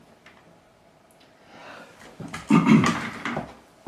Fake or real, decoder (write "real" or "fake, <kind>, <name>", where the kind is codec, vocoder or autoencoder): real